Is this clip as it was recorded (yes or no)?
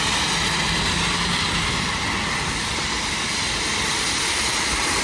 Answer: yes